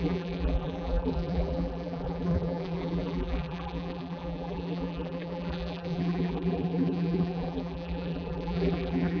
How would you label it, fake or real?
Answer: fake